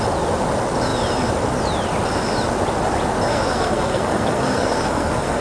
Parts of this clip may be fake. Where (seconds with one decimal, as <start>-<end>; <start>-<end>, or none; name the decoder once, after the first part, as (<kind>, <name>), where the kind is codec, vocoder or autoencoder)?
3.3-5.4 (codec, SNAC)